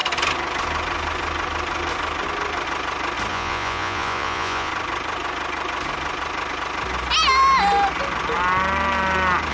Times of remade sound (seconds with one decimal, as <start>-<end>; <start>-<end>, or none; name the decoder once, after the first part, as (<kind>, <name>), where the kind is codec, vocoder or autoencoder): 3.3-4.7 (vocoder, Vocos)